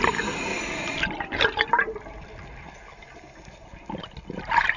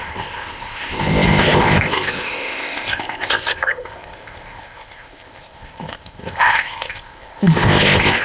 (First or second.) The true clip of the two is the first